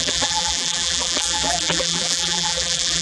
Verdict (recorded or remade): remade